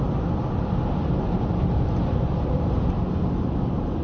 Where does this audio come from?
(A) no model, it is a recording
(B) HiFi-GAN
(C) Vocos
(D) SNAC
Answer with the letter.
A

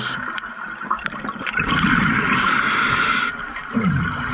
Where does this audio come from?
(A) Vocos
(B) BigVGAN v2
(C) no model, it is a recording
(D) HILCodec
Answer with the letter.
C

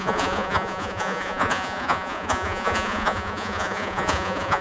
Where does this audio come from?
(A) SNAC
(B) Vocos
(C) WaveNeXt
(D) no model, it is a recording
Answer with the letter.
B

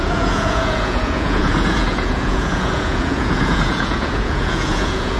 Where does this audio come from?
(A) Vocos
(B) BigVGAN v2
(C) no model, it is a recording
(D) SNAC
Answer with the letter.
A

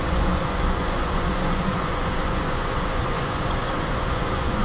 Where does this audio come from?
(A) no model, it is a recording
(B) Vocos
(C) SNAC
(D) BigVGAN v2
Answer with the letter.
B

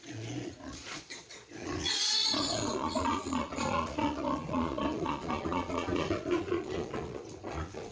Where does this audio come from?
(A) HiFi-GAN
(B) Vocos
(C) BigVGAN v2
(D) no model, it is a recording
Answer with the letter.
B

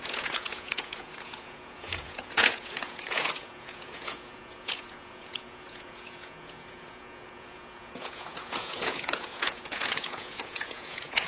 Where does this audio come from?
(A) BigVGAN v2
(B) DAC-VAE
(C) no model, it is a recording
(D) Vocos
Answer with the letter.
D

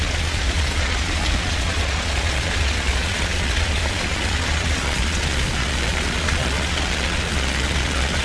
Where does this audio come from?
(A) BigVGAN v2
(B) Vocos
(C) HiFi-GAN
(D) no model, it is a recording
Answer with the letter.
B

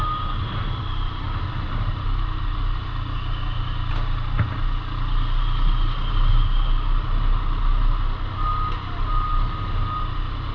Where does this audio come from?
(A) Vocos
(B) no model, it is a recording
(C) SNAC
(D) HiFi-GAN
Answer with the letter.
B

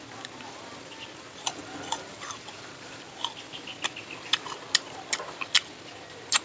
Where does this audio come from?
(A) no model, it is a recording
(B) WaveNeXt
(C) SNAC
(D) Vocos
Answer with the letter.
A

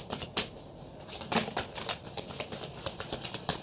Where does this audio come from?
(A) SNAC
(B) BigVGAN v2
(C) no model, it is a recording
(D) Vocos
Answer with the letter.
C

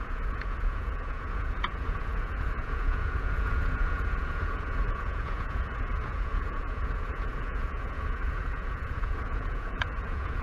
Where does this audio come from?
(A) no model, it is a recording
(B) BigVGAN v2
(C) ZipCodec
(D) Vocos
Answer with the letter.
D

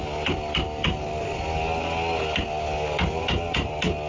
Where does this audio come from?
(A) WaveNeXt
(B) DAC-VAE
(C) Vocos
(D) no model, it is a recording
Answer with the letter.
D